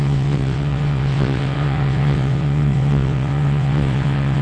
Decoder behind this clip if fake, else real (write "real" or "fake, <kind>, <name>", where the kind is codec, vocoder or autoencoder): fake, vocoder, WaveNeXt